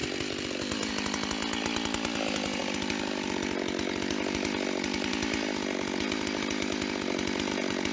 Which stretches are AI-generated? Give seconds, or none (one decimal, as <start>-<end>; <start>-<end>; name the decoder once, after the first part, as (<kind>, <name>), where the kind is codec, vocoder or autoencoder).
0.0-0.9 (vocoder, BigVGAN v2); 2.6-5.1

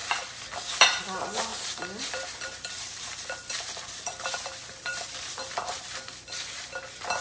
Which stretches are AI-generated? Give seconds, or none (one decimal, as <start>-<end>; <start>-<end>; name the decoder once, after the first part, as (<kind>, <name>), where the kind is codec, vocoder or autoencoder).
0.0-1.0 (vocoder, BigVGAN v2); 1.5-5.8